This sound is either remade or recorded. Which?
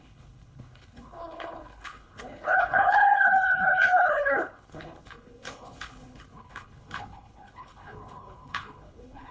remade